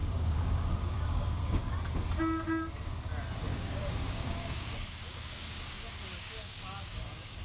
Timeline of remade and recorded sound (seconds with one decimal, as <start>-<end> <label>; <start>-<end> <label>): 0.0-1.6 remade; 1.6-3.5 recorded; 3.5-7.4 remade